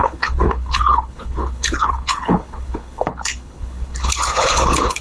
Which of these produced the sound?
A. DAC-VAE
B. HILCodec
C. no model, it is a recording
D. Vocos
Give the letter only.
B